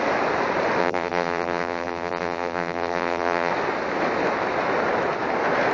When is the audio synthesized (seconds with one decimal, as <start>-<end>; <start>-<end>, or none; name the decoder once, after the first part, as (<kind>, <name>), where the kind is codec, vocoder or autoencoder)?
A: 0.8-3.5 (vocoder, BigVGAN v2)